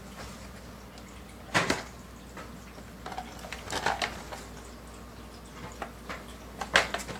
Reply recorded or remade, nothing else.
recorded